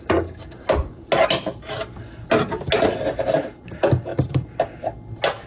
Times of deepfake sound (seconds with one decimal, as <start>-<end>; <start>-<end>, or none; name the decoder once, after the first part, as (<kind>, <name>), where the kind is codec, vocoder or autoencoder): none